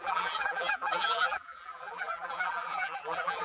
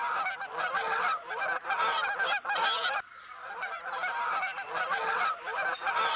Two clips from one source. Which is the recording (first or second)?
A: second